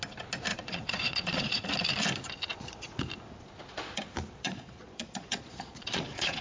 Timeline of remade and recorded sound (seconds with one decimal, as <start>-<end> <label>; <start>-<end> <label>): 0.0-0.5 recorded; 0.5-1.7 remade; 1.7-2.5 recorded; 2.5-3.0 remade; 3.0-3.7 recorded; 3.7-6.4 remade